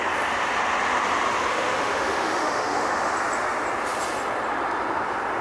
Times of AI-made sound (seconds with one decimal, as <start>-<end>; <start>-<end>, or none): 1.5-3.1